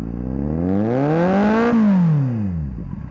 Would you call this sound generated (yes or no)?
no